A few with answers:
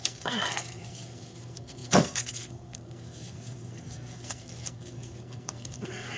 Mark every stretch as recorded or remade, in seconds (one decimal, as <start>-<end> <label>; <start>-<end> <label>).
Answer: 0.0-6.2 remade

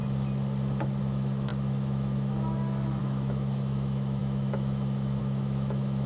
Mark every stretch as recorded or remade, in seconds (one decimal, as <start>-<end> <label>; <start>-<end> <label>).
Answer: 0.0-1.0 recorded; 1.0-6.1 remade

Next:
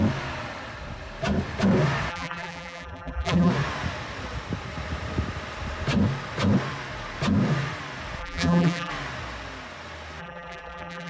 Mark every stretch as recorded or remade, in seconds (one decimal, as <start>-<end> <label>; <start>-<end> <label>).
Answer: 0.0-2.1 recorded; 2.1-3.5 remade; 3.5-8.2 recorded; 8.2-8.9 remade; 8.9-10.2 recorded; 10.2-11.1 remade